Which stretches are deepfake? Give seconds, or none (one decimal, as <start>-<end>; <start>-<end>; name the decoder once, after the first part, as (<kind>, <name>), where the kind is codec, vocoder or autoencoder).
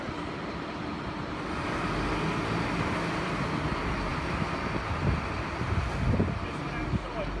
none